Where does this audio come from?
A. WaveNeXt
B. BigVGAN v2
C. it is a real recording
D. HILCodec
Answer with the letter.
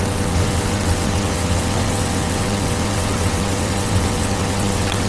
A